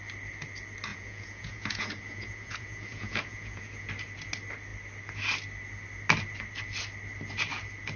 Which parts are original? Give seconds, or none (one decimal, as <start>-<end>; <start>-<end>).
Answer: 0.0-0.9; 3.9-8.0